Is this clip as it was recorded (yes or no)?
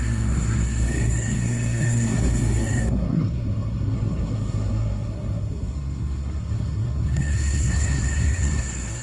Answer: no